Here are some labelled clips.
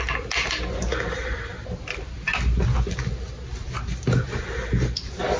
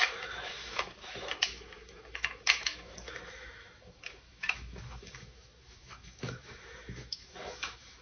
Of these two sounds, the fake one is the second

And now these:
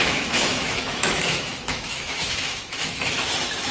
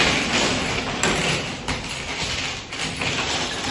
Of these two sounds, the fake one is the first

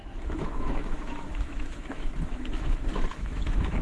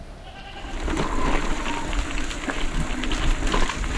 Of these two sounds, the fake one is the first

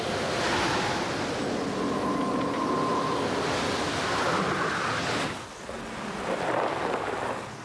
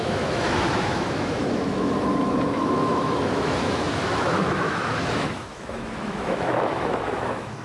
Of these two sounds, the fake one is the second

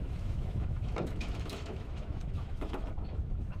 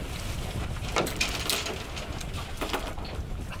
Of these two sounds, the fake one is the first